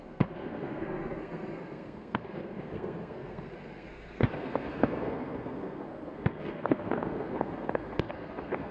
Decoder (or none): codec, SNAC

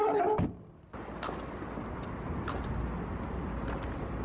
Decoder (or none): none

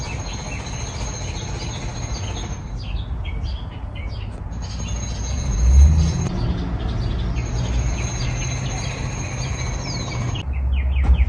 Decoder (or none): none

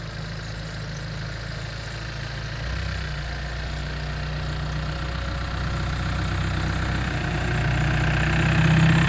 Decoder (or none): none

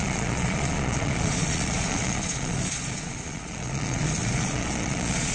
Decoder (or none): vocoder, Vocos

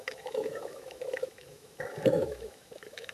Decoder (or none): autoencoder, DAC-VAE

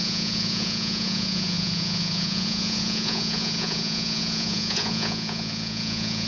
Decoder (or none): vocoder, Vocos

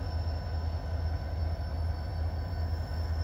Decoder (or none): none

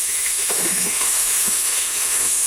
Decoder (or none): autoencoder, DAC-VAE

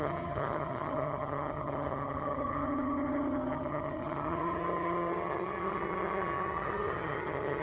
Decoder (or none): vocoder, HiFi-GAN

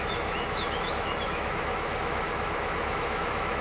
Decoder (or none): autoencoder, DAC-VAE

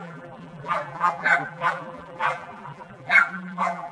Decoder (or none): vocoder, BigVGAN v2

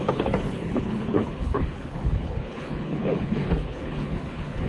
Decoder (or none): codec, HILCodec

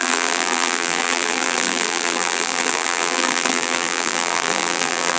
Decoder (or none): vocoder, BigVGAN v2